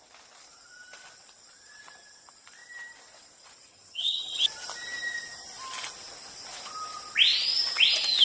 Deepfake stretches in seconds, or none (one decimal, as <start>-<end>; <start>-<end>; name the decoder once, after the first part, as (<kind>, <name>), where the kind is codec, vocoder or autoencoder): 3.7-4.4 (vocoder, HiFi-GAN)